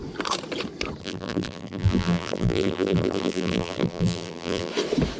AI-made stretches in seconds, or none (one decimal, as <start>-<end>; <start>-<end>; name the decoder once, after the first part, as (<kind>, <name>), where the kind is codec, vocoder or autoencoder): 1.0-4.7 (vocoder, BigVGAN v2)